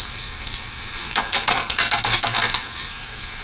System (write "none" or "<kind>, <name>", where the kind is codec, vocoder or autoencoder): codec, SNAC